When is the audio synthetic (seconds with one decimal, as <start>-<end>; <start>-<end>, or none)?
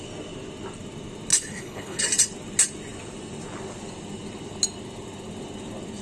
1.3-2.0